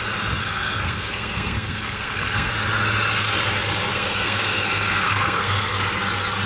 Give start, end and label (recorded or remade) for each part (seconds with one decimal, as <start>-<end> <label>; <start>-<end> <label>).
0.0-0.4 recorded; 0.4-2.5 remade; 2.5-3.9 recorded; 3.9-5.9 remade; 5.9-6.5 recorded